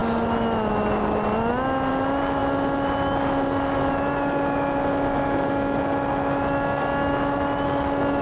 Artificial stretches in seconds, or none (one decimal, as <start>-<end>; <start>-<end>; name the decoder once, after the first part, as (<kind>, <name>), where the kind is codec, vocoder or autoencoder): none